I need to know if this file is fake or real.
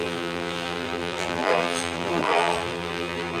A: fake